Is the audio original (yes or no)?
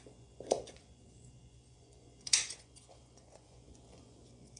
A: no